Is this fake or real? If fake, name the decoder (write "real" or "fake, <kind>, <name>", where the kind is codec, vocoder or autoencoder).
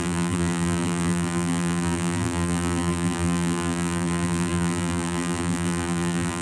fake, vocoder, BigVGAN v2